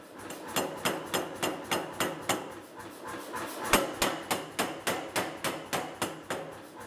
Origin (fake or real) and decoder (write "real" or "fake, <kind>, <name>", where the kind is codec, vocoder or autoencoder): real